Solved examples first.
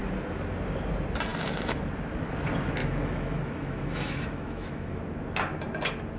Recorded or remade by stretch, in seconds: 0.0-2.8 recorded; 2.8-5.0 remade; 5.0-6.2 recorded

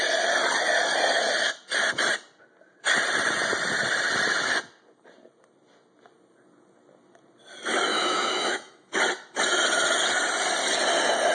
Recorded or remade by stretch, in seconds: 0.0-7.9 recorded; 7.9-9.0 remade; 9.0-11.3 recorded

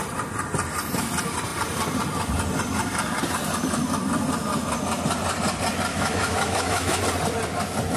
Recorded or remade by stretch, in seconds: 0.0-5.9 recorded; 5.9-7.0 remade; 7.0-8.0 recorded

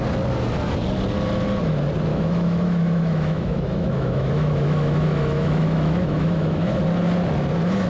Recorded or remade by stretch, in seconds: 0.0-2.1 recorded; 2.1-6.8 remade; 6.8-7.9 recorded

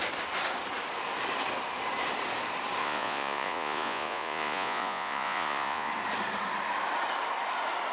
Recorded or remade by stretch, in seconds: 0.0-2.8 recorded; 2.8-5.9 remade; 5.9-7.9 recorded

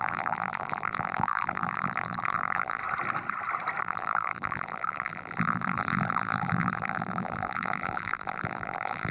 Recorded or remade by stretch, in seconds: 0.0-2.8 remade; 2.8-3.8 recorded; 3.8-9.1 remade